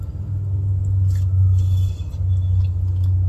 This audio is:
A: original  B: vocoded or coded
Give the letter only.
A